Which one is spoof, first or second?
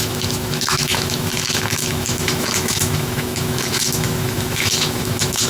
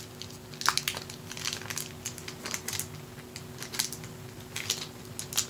first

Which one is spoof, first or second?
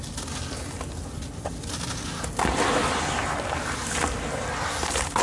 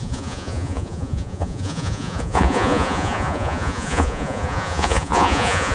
second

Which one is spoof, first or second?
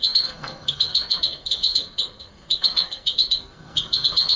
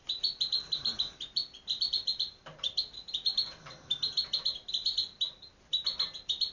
first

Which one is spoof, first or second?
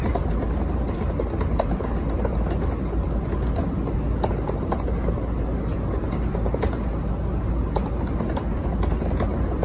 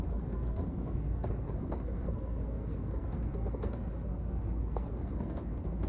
second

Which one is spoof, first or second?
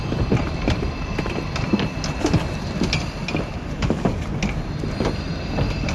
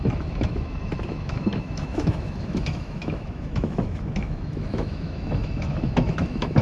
second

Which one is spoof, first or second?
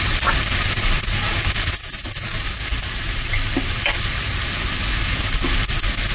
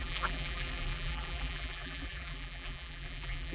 second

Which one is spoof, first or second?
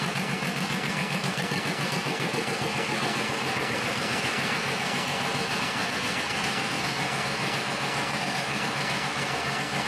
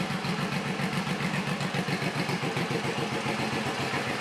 first